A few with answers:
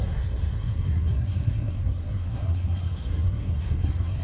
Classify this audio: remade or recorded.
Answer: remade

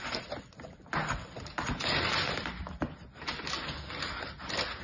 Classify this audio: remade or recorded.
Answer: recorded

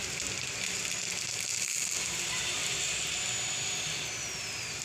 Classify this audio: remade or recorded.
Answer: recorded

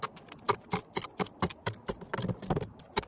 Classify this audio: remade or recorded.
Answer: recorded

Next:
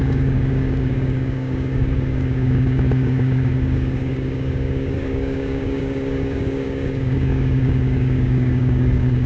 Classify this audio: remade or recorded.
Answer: remade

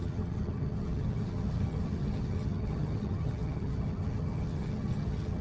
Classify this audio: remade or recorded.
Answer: remade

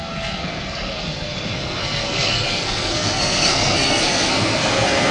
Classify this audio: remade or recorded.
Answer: remade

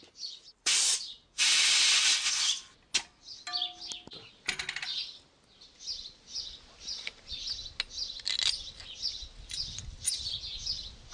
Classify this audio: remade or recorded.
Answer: recorded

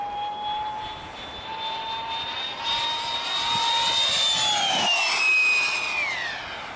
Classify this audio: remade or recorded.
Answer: recorded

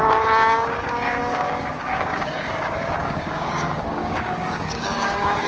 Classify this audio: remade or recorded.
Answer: remade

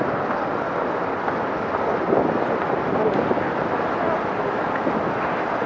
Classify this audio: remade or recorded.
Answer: recorded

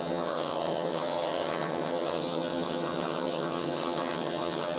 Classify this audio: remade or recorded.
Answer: remade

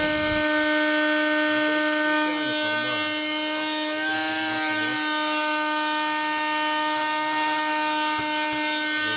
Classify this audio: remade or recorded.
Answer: recorded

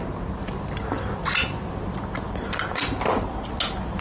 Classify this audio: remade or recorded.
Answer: recorded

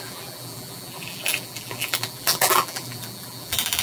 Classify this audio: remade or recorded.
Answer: remade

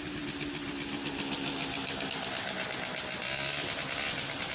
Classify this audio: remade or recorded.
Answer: recorded